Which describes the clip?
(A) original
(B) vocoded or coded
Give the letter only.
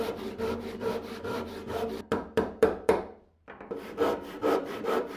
B